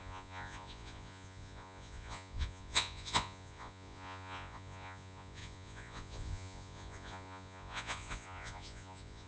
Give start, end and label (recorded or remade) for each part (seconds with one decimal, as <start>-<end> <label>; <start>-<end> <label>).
0.0-9.3 remade